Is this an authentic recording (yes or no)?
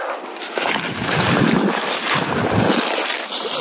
yes